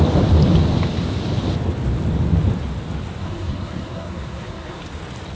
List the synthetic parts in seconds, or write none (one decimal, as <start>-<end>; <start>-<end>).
3.2-4.8